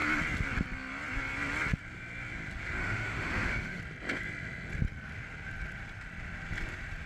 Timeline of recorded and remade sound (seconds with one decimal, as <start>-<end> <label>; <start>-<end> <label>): 0.0-2.8 recorded; 2.8-3.8 remade; 3.8-7.1 recorded

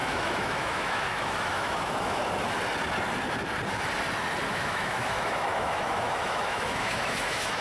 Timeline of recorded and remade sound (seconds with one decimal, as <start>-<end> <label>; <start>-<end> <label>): 0.0-2.2 remade; 2.2-4.5 recorded; 4.5-7.6 remade

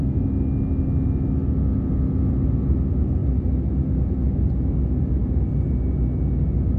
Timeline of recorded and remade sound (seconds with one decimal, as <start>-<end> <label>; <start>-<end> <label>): 0.0-6.8 recorded

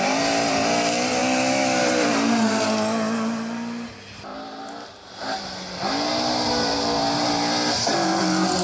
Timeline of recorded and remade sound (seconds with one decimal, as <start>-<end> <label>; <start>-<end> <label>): 0.0-1.2 recorded; 1.2-1.8 remade; 1.8-8.6 recorded

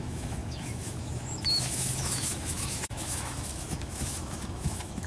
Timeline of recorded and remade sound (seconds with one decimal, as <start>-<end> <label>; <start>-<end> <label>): 0.0-5.1 remade

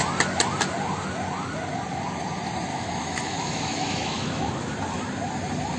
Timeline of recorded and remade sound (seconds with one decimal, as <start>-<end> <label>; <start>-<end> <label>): 0.0-2.7 recorded; 2.7-4.5 remade; 4.5-5.8 recorded